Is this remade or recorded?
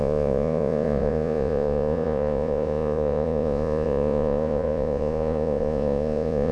remade